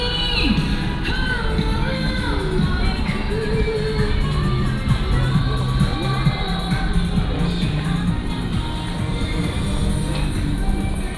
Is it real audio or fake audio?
real